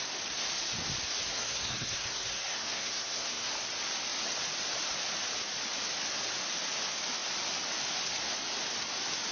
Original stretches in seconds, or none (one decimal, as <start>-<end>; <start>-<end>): 0.0-1.3; 3.5-9.3